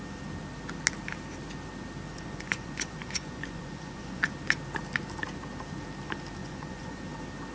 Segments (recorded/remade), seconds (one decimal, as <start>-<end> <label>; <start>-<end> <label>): 0.0-2.1 recorded; 2.1-4.2 remade; 4.2-6.4 recorded; 6.4-7.0 remade; 7.0-7.5 recorded